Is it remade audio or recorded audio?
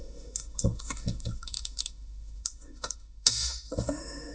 remade